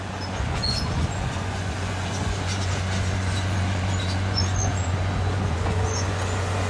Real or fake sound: fake